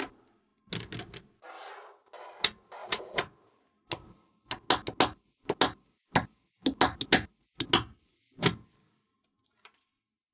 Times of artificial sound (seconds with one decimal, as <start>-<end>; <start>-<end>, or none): 2.8-3.3